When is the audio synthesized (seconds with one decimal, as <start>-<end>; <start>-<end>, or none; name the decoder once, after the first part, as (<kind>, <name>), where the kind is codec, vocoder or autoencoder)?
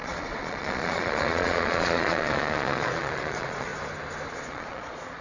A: 0.0-3.7 (vocoder, Vocos); 4.3-5.2